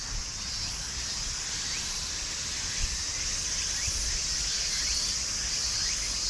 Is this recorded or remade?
recorded